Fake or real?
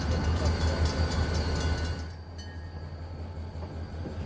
real